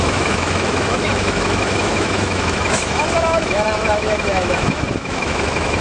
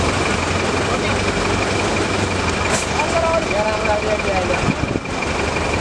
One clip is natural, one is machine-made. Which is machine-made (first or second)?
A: first